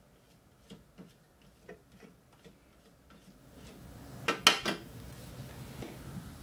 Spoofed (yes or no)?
no